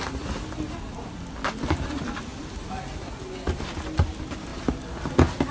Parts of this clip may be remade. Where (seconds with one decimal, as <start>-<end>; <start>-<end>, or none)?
4.5-5.1

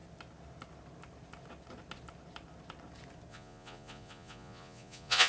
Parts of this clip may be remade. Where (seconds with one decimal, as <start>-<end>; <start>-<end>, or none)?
3.3-5.3